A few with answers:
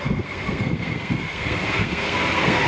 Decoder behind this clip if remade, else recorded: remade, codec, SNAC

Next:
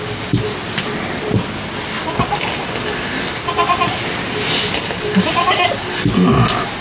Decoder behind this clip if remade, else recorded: recorded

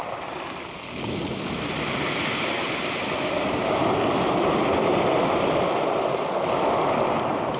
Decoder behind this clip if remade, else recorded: recorded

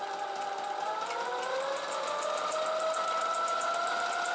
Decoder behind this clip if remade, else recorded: recorded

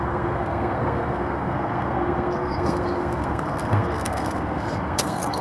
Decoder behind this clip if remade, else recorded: remade, codec, SNAC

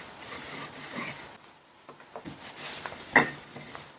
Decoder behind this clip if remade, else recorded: recorded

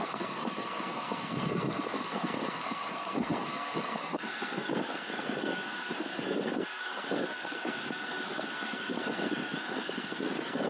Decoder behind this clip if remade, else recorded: remade, codec, SNAC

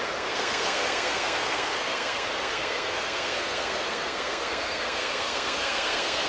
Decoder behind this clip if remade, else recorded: remade, codec, SNAC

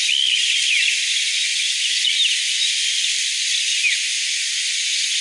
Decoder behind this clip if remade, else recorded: recorded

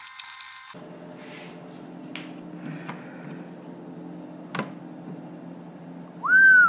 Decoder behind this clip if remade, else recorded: recorded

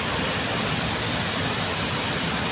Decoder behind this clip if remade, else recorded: recorded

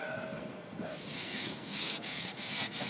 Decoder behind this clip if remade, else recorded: remade, codec, SNAC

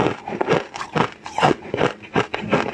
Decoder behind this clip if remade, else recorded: recorded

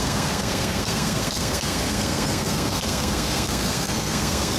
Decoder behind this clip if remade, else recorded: remade, codec, SNAC